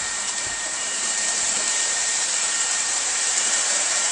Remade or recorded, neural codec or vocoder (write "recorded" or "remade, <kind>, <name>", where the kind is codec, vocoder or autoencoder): remade, vocoder, BigVGAN v2